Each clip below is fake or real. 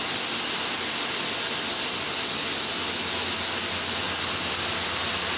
real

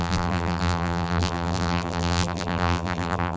fake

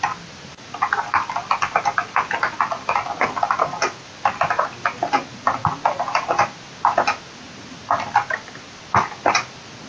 real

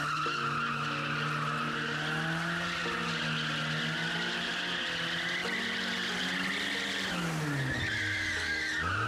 real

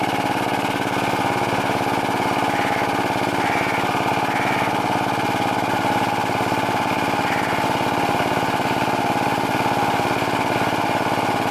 real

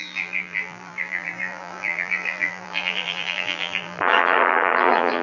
fake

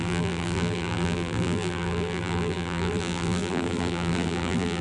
fake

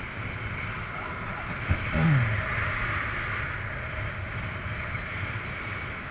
real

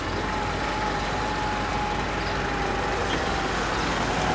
real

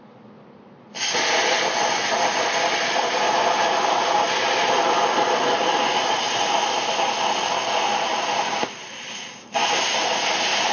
real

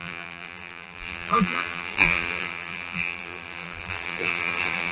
fake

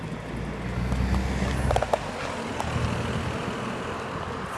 real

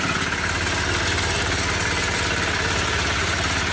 real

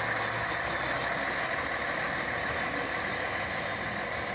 real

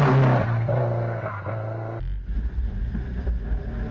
real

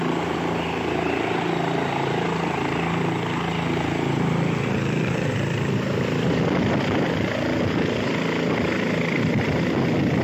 real